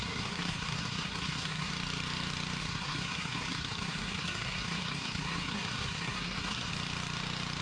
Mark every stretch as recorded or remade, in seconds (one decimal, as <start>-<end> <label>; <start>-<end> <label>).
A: 0.0-1.7 remade; 1.7-2.6 recorded; 2.6-6.7 remade; 6.7-7.6 recorded